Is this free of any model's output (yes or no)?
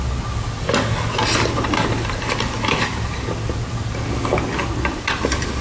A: yes